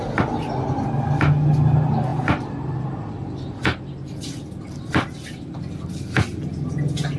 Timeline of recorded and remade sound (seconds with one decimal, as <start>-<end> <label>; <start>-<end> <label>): 0.0-7.2 recorded